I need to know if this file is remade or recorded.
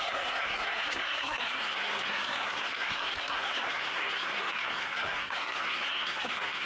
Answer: remade